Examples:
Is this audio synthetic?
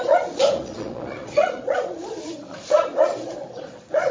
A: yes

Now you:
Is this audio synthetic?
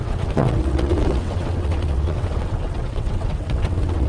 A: yes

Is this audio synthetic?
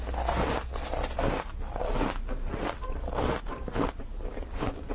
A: no